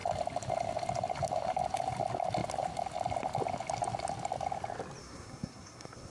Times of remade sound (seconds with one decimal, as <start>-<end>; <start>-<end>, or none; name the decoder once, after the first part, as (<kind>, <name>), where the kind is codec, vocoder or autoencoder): 5.0-6.1 (codec, SNAC)